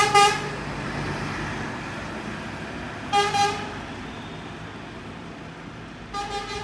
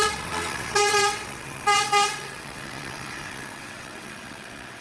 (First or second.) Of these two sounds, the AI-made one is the second